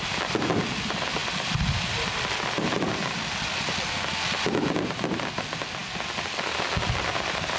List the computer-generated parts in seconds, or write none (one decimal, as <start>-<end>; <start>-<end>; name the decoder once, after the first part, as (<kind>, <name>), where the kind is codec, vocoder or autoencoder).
none